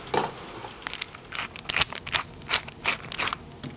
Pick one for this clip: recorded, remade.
recorded